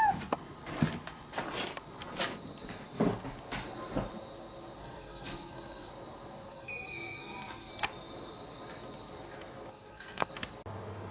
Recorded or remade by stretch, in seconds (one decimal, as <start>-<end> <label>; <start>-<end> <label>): 0.0-4.8 recorded; 4.8-5.9 remade; 5.9-6.5 recorded; 6.5-7.7 remade; 7.7-9.7 recorded; 9.7-10.3 remade; 10.3-11.1 recorded